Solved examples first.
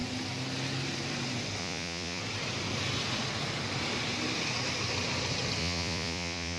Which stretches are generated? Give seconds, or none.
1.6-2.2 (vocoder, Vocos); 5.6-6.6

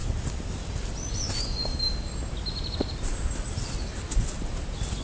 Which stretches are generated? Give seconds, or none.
1.1-1.7 (vocoder, Vocos)

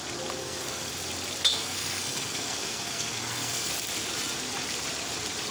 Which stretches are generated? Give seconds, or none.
0.4-0.9 (codec, SNAC); 1.5-3.7

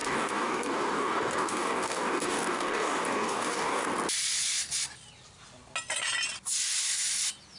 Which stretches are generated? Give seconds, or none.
0.0-3.9 (codec, DAC)

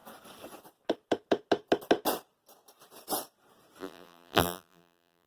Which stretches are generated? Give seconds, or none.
3.8-5.3 (vocoder, BigVGAN v2)

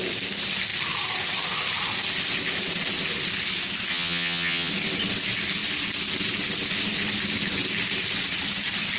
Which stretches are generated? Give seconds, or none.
3.9-4.7 (vocoder, HiFi-GAN)